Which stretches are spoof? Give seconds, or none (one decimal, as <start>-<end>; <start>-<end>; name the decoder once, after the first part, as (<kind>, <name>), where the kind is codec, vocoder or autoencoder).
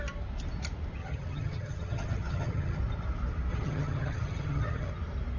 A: 1.0-2.8 (vocoder, HiFi-GAN); 3.5-4.9